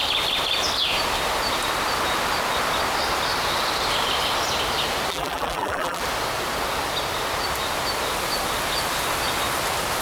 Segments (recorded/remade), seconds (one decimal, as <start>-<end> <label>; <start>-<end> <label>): 0.0-5.1 recorded; 5.1-6.0 remade; 6.0-10.0 recorded